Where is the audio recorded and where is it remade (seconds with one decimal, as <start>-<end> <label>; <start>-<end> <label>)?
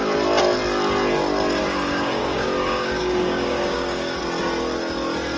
0.0-1.6 recorded; 1.6-4.2 remade; 4.2-5.4 recorded